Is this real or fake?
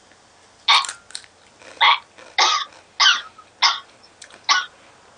real